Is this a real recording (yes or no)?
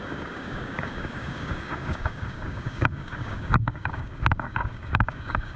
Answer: no